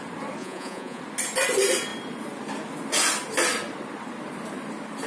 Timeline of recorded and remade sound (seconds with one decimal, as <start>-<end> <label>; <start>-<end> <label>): 0.0-0.4 recorded; 0.4-1.0 remade; 1.0-5.1 recorded